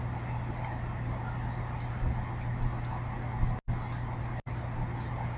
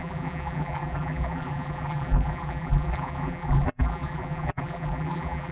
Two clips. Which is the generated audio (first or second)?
second